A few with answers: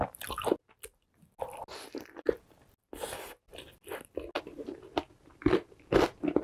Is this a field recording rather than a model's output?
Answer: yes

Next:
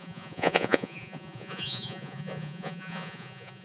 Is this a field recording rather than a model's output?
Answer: no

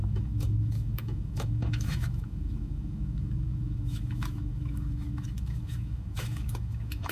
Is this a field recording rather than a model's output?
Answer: no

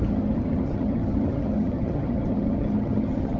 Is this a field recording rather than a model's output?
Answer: no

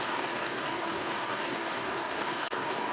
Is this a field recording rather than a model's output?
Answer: no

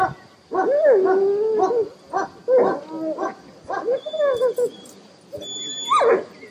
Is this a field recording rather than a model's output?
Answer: yes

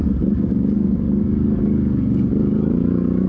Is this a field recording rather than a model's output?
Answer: no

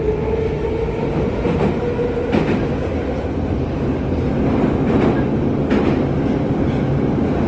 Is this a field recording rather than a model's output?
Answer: yes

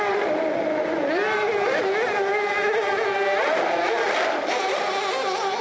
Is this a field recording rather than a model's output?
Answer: yes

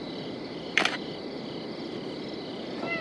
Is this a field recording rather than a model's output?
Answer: no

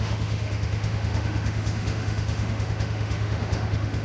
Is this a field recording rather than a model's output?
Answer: no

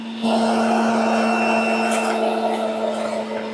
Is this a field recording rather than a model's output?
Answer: yes